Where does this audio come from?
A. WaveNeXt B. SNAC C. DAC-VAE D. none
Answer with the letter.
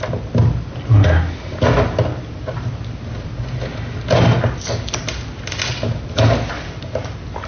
D